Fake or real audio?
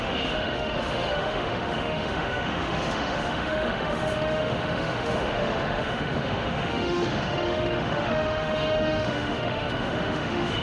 fake